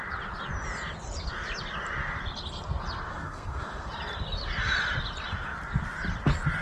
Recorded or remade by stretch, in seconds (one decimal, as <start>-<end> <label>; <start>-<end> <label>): 0.0-3.1 recorded; 3.1-3.9 remade; 3.9-6.6 recorded